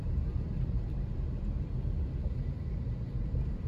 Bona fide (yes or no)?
no